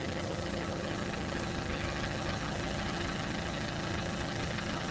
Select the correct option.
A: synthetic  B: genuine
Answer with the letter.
A